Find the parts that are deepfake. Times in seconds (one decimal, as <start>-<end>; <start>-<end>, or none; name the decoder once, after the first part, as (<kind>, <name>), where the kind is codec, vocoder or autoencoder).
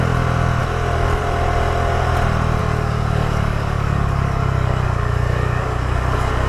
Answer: 2.6-6.5 (codec, DAC)